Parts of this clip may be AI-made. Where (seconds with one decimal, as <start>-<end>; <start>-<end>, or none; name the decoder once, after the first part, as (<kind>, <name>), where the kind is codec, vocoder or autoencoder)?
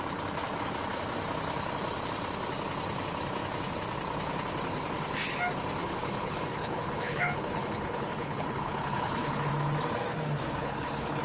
5.8-9.5 (codec, HILCodec); 10.6-11.2